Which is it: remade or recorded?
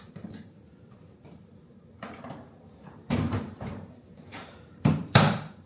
remade